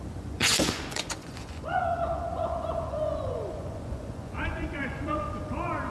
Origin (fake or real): fake